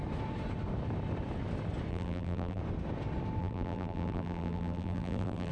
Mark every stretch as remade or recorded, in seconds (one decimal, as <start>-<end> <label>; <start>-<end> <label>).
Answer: 0.0-1.9 recorded; 1.9-2.6 remade; 2.6-3.4 recorded; 3.4-5.5 remade